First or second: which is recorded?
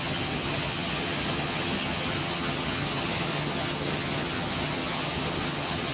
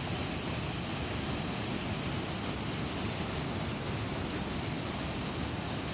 second